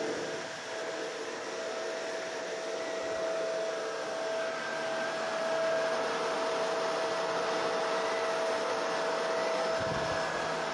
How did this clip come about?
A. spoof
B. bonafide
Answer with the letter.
B